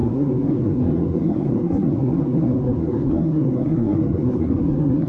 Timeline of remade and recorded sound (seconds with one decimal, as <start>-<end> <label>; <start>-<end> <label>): 0.0-5.1 remade